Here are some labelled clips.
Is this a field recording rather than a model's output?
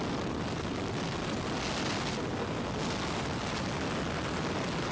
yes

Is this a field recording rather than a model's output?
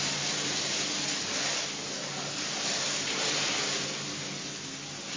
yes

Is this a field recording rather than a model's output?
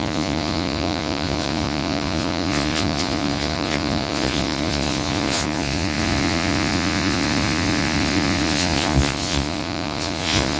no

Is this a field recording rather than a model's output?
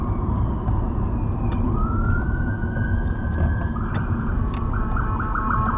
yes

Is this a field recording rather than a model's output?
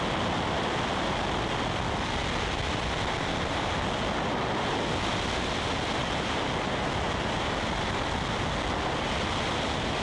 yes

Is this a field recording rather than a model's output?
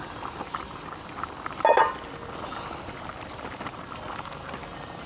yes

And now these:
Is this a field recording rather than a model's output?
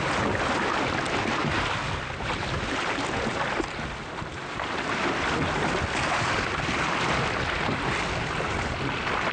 yes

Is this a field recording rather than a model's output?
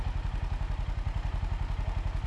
yes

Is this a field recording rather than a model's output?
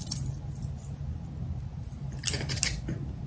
yes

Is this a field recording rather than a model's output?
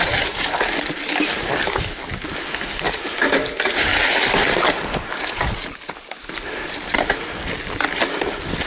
yes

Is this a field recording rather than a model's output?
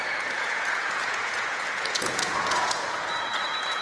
no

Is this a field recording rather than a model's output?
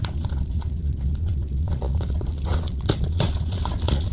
no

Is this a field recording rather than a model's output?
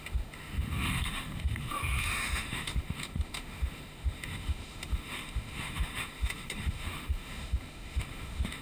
no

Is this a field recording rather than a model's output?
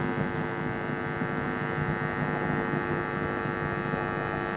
yes